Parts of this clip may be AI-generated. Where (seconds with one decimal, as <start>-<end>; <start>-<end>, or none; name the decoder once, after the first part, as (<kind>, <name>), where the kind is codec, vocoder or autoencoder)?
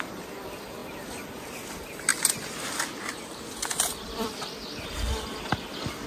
none